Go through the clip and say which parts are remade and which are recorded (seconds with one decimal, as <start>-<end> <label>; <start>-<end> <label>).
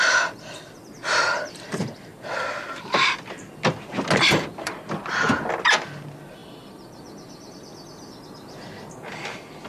0.0-9.7 recorded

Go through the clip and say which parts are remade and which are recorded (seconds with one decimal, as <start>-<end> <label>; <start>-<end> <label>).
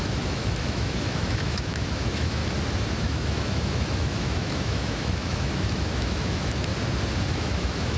0.0-2.4 remade; 2.4-3.0 recorded; 3.0-6.7 remade; 6.7-7.3 recorded; 7.3-8.0 remade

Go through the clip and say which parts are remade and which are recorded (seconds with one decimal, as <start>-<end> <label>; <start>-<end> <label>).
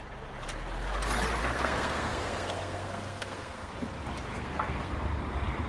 0.0-1.4 recorded; 1.4-3.7 remade; 3.7-4.3 recorded; 4.3-5.1 remade; 5.1-5.7 recorded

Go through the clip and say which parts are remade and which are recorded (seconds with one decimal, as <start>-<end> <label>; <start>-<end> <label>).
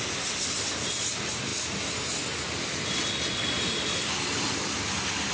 0.0-5.3 recorded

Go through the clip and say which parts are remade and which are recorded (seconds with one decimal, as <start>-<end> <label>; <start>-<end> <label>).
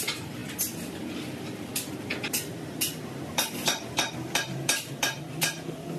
0.0-6.0 remade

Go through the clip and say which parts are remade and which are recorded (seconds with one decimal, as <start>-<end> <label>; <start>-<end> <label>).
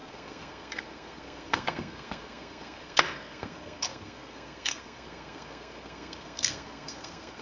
0.0-7.4 remade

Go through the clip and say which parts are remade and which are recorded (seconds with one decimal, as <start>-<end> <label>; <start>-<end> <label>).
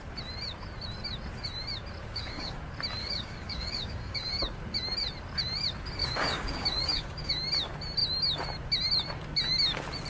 0.0-2.0 recorded; 2.0-2.6 remade; 2.6-3.0 recorded; 3.0-4.4 remade; 4.4-6.0 recorded; 6.0-7.3 remade; 7.3-10.1 recorded